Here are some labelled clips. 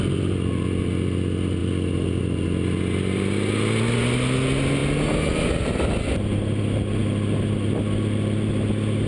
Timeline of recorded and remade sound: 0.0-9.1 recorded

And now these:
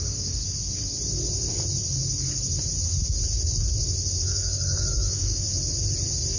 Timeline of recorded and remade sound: 0.0-0.4 remade; 0.4-4.2 recorded; 4.2-5.5 remade; 5.5-6.4 recorded

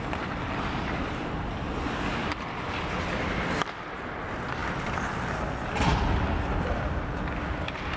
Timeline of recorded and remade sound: 0.0-8.0 recorded

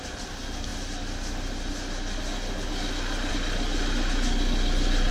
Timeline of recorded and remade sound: 0.0-5.1 recorded